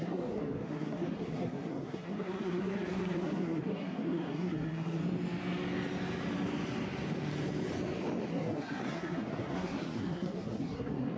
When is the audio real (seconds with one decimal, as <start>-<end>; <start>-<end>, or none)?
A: 5.0-8.3